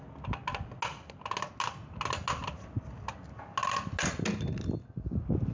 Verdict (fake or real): real